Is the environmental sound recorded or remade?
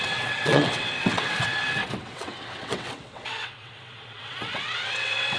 remade